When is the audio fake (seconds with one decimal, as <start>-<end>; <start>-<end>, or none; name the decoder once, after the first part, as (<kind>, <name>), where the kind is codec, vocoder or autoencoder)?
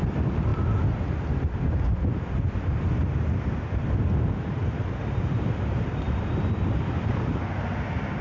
4.6-7.3 (vocoder, BigVGAN v2)